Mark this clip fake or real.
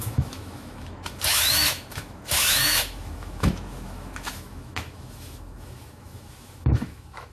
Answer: fake